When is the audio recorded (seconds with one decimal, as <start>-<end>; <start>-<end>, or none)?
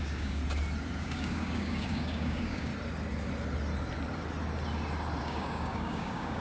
0.4-1.0; 2.7-5.2